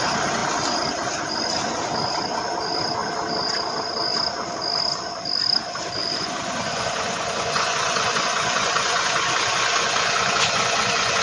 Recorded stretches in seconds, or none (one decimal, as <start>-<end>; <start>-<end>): 0.0-6.0